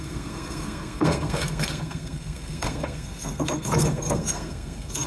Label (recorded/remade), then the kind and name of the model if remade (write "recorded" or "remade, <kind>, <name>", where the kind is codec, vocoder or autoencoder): remade, codec, SNAC